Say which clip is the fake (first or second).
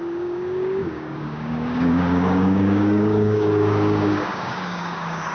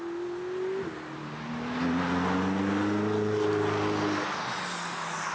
first